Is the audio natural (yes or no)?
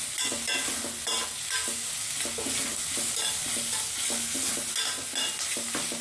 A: yes